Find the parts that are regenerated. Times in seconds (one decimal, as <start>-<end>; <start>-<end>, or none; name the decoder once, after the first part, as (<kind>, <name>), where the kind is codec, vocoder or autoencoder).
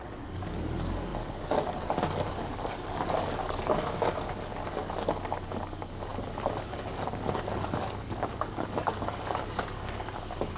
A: 0.0-10.6 (codec, DAC)